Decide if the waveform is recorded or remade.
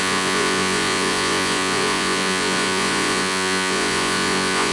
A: remade